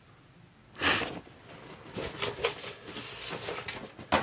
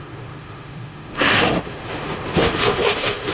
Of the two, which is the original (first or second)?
first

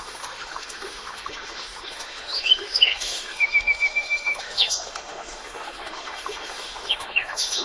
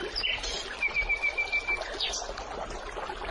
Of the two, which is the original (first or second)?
second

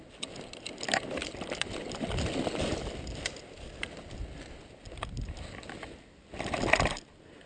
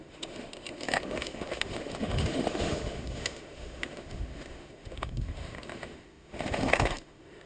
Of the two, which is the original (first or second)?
first